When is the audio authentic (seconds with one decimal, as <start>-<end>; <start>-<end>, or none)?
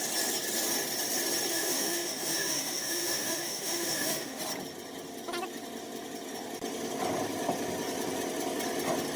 0.0-1.5; 4.4-9.2